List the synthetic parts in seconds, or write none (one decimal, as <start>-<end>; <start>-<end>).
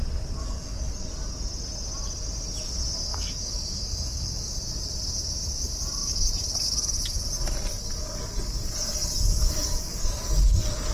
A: 0.4-1.1; 3.1-4.5; 9.4-10.9